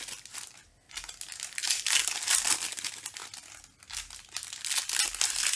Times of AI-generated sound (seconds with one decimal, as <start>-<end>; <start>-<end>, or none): none